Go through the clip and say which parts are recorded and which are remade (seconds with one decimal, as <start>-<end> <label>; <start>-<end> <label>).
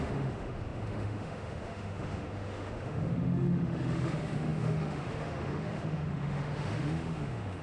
0.0-7.6 remade